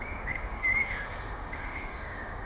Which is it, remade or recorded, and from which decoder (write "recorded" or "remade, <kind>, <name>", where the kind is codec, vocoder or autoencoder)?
remade, autoencoder, DAC-VAE